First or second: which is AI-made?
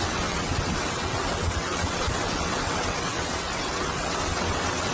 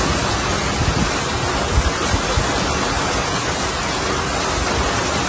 first